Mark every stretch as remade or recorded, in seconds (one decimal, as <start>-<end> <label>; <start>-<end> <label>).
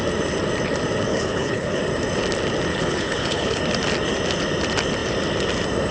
0.0-1.1 recorded; 1.1-1.8 remade; 1.8-2.7 recorded; 2.7-3.6 remade; 3.6-5.9 recorded